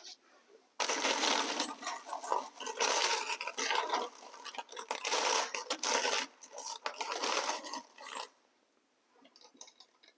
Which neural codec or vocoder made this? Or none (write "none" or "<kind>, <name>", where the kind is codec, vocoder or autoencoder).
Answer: none